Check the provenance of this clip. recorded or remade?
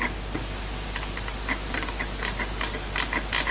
recorded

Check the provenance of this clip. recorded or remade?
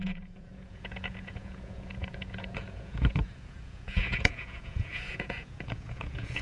remade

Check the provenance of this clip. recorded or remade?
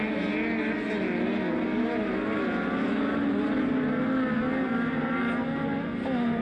recorded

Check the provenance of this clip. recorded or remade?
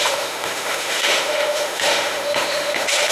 remade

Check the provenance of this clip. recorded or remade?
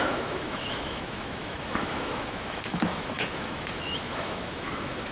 remade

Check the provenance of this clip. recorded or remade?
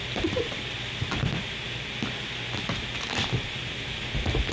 recorded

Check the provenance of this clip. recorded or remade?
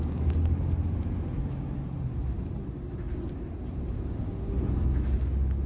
recorded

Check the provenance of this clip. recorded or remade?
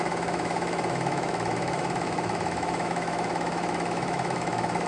remade